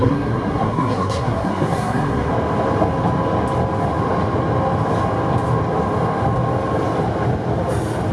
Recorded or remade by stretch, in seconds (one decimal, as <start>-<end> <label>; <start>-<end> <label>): 0.0-2.3 remade; 2.3-8.1 recorded